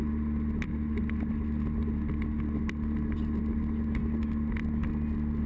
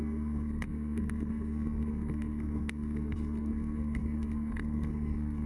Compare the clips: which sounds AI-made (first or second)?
second